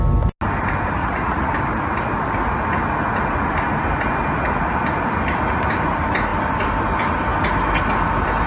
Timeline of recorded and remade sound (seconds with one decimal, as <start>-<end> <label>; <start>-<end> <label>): 0.0-1.0 recorded; 1.0-1.5 remade; 1.5-8.5 recorded